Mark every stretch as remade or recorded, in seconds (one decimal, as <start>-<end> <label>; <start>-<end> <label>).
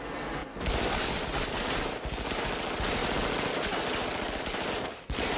0.0-5.4 recorded